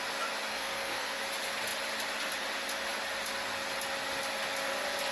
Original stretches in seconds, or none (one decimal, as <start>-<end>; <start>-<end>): 0.0-0.5; 1.2-5.1